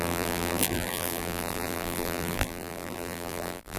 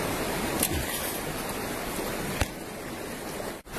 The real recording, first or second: second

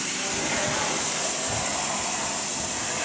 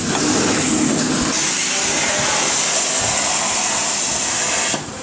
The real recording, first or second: second